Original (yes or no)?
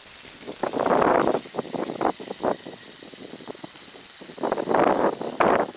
yes